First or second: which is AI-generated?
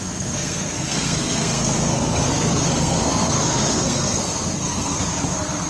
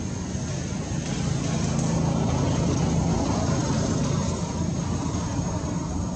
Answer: first